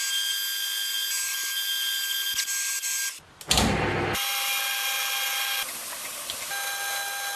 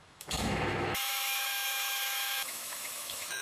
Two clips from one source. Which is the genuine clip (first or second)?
first